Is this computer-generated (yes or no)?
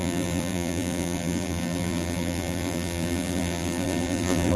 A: yes